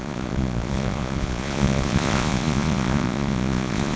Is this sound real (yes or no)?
no